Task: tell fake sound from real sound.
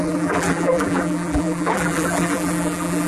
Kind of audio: fake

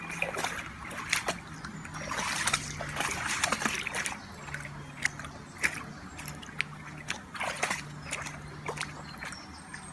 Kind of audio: real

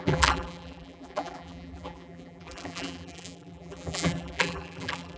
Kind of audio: fake